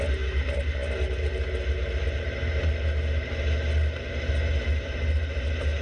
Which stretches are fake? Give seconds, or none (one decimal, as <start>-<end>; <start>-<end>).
none